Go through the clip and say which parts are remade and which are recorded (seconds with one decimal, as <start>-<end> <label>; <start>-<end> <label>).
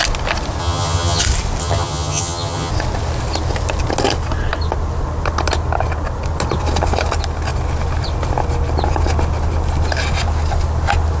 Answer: 0.0-0.6 recorded; 0.6-1.2 remade; 1.2-1.6 recorded; 1.6-2.7 remade; 2.7-11.2 recorded